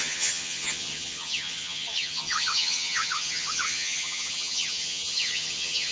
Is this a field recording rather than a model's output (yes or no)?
no